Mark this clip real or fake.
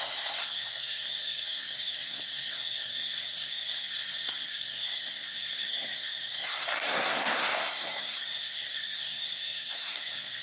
fake